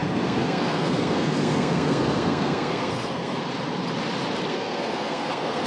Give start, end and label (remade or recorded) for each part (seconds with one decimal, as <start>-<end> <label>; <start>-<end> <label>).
0.0-3.4 remade; 3.4-4.5 recorded; 4.5-5.7 remade